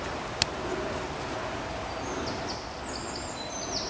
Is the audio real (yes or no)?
yes